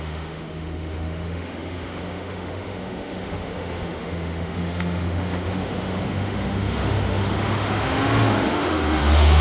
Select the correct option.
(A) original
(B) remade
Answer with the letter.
B